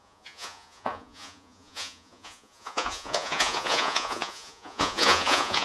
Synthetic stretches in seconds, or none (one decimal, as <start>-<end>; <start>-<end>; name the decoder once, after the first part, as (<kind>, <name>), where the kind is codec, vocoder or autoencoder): 0.0-5.6 (vocoder, Vocos)